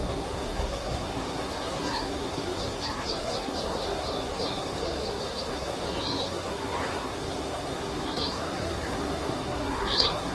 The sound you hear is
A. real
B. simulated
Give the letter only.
B